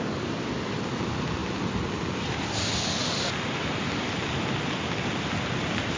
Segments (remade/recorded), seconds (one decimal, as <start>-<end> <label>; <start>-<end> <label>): 0.0-6.0 recorded